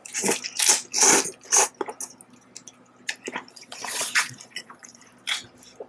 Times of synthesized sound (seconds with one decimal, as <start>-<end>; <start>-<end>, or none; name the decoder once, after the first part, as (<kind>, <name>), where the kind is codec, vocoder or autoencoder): 3.5-5.1 (vocoder, Vocos)